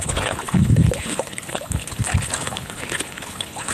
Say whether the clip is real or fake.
fake